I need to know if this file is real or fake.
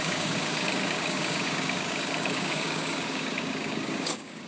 fake